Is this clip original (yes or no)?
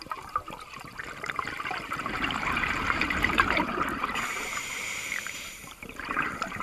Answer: no